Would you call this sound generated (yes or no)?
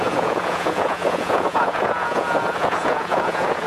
yes